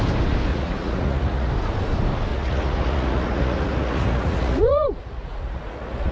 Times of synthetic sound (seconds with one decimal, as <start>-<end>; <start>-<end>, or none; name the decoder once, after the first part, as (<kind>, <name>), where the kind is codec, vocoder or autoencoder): 0.5-1.5 (vocoder, Vocos); 2.3-6.1